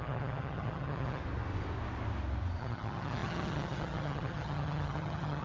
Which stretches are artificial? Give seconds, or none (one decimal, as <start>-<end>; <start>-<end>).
0.0-1.2; 2.6-5.4